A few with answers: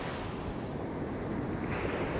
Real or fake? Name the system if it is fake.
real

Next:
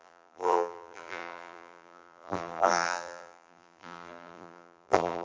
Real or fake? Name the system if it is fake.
fake, vocoder, BigVGAN v2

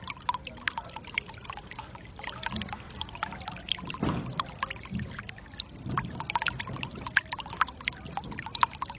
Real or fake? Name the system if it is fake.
real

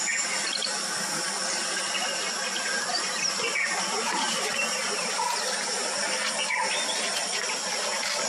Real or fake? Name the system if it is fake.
real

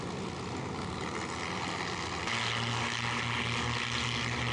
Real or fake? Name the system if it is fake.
real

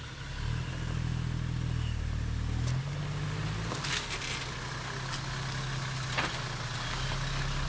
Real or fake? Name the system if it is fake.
real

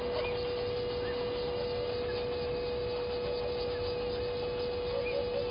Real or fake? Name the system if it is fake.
real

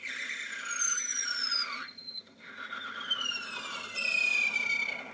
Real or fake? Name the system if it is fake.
real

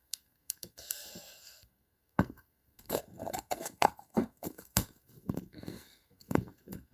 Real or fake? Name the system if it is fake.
fake, codec, SNAC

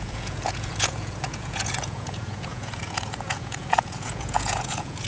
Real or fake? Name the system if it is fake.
fake, vocoder, Vocos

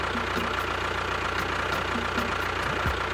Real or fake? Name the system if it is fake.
real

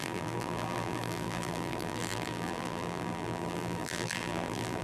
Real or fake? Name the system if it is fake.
fake, vocoder, BigVGAN v2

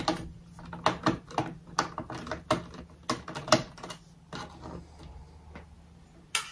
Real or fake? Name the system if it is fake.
real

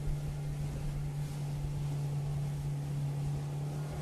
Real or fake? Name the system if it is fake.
real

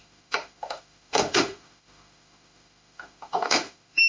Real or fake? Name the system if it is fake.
fake, autoencoder, DAC-VAE